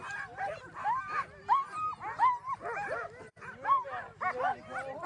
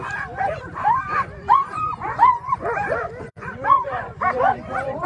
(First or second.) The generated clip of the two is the second